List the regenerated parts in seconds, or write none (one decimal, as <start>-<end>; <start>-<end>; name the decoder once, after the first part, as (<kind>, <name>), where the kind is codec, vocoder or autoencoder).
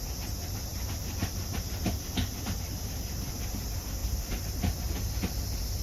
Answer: none